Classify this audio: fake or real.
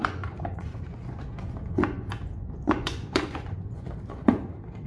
fake